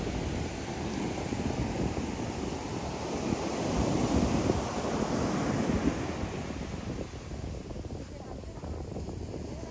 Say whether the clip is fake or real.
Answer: real